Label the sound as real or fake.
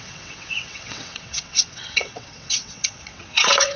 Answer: fake